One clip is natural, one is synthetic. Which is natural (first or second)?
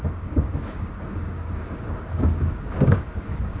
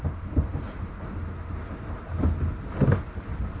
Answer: second